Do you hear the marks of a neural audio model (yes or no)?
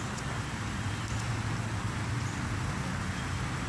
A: no